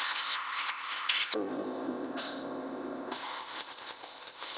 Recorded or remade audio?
remade